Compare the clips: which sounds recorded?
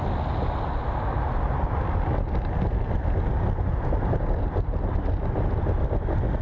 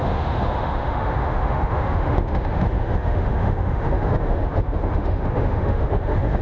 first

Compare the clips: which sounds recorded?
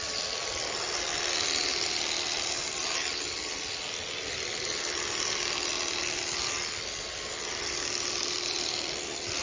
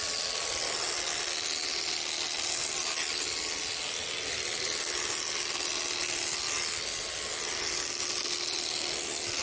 second